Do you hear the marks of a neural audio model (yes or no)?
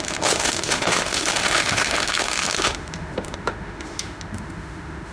yes